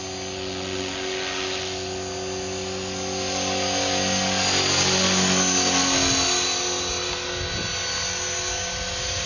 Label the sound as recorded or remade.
recorded